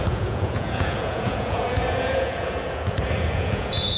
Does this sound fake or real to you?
fake